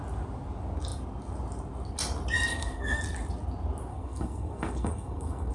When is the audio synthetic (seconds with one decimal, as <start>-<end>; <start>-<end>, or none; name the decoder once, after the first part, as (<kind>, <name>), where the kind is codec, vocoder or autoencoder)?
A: 2.5-3.0 (codec, SNAC); 3.9-5.5